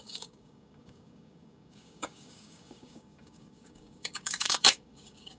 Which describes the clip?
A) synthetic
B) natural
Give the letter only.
A